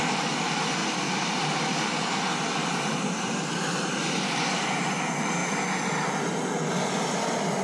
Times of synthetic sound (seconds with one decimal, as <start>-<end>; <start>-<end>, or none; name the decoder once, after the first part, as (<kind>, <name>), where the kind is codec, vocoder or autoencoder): 0.0-0.8 (vocoder, BigVGAN v2); 3.0-5.4; 6.3-7.6

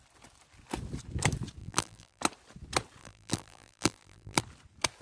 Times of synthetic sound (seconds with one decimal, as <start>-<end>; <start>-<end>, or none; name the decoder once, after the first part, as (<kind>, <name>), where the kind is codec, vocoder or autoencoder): 1.6-2.2 (vocoder, BigVGAN v2); 3.0-4.4

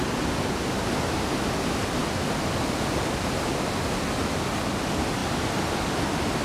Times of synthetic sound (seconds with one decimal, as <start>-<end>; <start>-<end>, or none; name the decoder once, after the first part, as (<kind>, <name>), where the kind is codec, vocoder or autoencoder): none

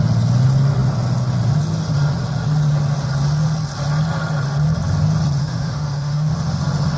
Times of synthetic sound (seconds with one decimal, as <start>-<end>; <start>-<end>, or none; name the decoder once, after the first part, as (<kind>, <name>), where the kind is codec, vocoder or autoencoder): 5.4-6.3 (autoencoder, DAC-VAE)

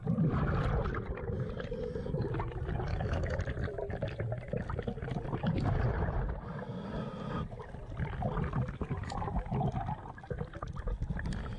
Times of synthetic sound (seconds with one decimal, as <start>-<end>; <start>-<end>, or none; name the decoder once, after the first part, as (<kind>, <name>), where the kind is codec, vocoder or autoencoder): 2.9-3.4 (codec, DAC)

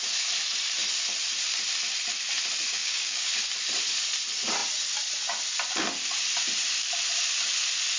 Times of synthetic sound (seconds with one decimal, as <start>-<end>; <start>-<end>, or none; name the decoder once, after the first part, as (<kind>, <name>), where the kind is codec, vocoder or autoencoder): 2.7-3.3 (codec, DAC)

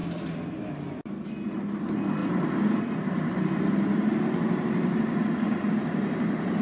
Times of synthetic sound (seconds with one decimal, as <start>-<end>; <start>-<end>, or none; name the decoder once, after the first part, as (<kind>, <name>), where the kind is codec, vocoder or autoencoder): 2.2-6.6 (vocoder, BigVGAN v2)